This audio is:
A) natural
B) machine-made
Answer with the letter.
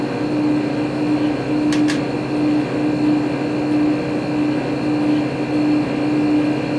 A